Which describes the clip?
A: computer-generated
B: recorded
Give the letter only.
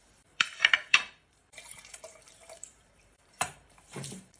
A